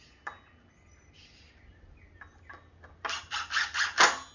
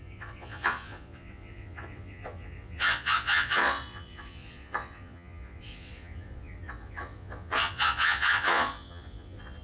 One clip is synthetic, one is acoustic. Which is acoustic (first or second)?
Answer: first